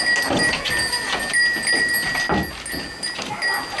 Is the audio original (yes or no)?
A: yes